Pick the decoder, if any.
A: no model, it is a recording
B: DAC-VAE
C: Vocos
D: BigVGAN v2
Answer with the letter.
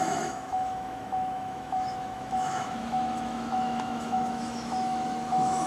B